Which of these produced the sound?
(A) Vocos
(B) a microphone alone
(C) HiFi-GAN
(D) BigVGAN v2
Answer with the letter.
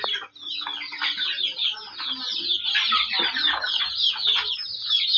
B